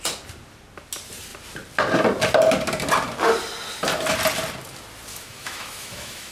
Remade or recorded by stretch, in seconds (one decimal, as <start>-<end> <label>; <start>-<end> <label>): 0.0-5.1 recorded; 5.1-6.3 remade